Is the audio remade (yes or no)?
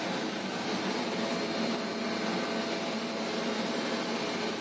no